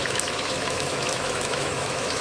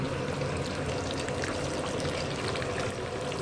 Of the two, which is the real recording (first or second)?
second